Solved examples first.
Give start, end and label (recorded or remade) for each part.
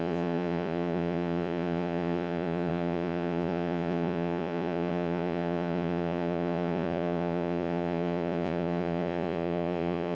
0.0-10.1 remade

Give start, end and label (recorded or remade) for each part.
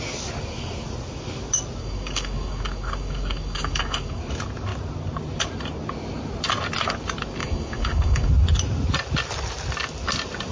0.0-1.8 recorded; 1.8-4.2 remade; 4.2-7.4 recorded; 7.4-8.3 remade; 8.3-10.5 recorded